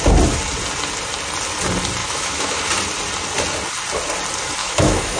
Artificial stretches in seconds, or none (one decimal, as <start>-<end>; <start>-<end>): 2.0-2.7; 4.6-5.2